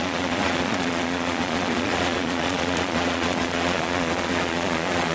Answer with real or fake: fake